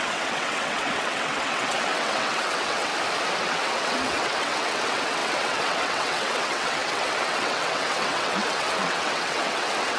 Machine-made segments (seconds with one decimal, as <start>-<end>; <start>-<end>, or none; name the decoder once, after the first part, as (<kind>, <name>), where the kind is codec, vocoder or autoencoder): 0.0-2.9 (vocoder, WaveNeXt); 3.4-10.0